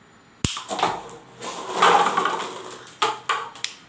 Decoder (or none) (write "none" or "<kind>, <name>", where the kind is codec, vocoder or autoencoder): none